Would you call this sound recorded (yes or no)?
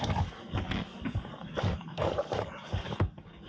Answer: no